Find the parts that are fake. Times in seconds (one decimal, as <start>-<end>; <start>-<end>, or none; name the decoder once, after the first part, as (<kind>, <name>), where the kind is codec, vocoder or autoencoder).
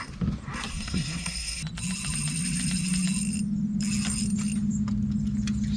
0.7-1.6 (codec, SNAC)